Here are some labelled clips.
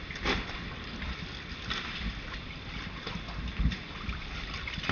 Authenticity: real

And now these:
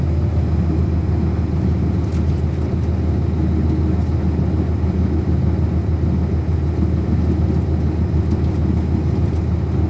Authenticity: real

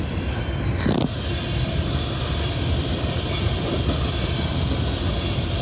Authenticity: real